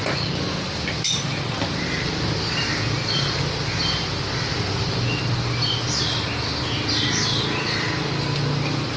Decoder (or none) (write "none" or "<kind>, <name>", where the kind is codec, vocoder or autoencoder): none